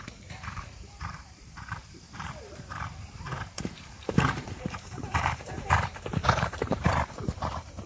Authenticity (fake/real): fake